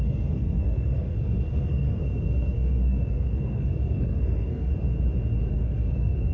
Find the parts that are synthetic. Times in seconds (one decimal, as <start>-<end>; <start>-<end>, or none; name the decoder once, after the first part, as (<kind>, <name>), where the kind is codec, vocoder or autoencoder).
0.0-4.7 (codec, SNAC); 5.5-6.3